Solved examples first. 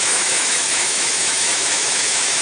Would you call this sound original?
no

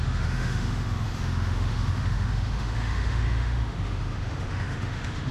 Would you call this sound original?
no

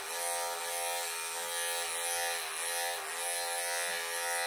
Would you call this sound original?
yes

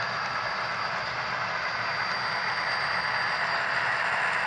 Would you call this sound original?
yes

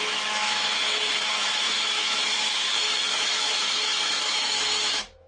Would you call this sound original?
no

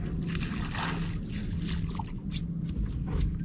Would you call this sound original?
yes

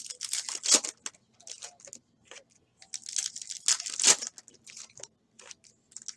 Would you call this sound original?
yes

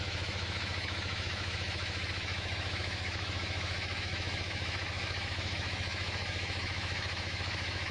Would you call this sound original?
no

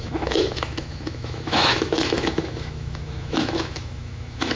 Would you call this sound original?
no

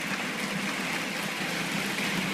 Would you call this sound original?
yes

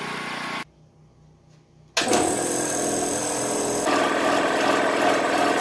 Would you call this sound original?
yes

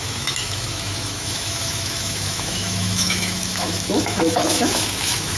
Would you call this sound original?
no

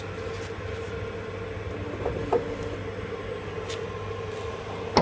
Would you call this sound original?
yes